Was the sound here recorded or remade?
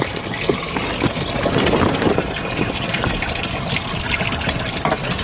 recorded